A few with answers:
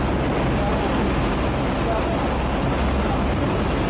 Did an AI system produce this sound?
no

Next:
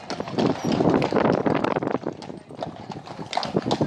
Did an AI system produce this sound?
no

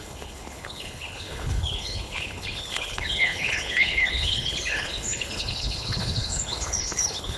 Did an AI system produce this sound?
yes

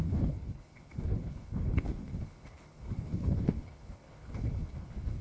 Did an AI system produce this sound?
yes